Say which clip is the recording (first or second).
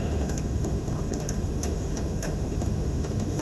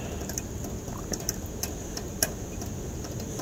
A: second